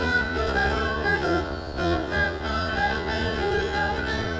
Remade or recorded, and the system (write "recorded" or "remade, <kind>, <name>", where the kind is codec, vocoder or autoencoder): remade, vocoder, Vocos